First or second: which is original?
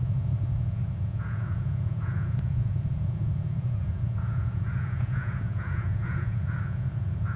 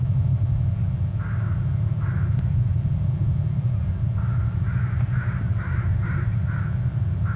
second